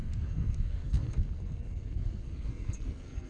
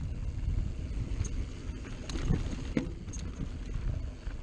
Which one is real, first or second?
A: second